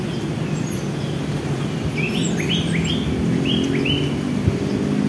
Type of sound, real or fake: real